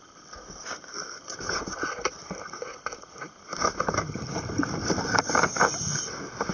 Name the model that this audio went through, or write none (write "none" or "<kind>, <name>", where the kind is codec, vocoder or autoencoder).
none